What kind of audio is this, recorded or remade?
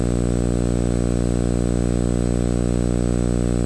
recorded